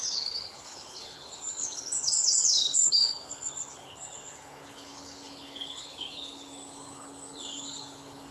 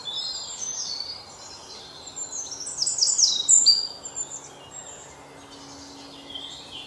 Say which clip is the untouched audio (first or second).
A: second